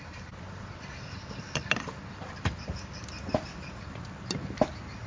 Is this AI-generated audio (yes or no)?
no